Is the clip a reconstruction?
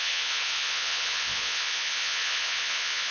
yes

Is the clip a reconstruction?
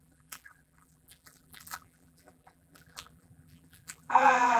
yes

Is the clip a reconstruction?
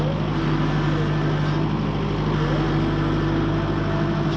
no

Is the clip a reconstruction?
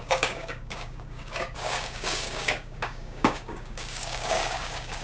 yes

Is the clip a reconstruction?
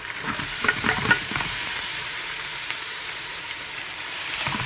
yes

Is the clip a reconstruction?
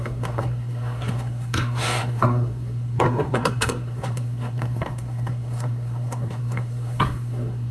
yes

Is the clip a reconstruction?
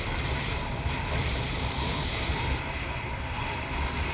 yes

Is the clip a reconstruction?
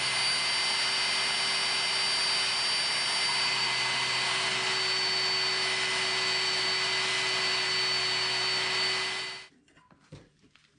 no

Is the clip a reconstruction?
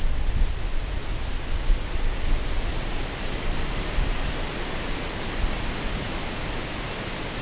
no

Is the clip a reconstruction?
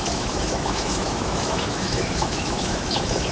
yes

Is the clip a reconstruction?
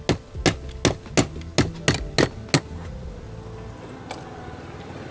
no